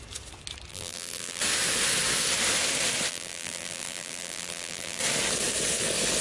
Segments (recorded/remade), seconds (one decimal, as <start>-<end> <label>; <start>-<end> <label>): 0.0-0.7 recorded; 0.7-1.4 remade; 1.4-3.1 recorded; 3.1-5.0 remade; 5.0-6.2 recorded